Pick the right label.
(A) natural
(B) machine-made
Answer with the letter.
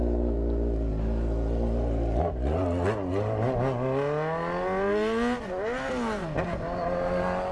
A